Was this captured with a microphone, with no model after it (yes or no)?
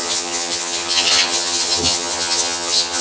no